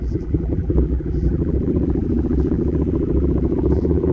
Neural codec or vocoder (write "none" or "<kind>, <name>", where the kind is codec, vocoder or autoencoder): vocoder, BigVGAN v2